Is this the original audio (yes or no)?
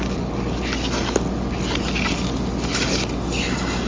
yes